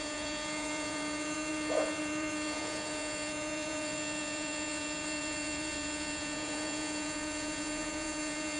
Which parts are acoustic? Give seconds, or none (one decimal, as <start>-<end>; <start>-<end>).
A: none